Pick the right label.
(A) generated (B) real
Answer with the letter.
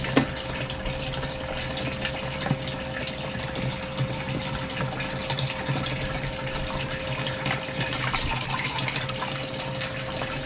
B